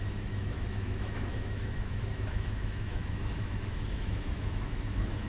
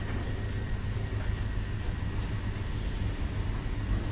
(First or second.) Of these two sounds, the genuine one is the second